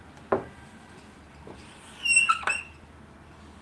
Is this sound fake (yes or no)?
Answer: no